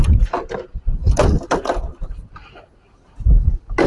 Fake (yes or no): no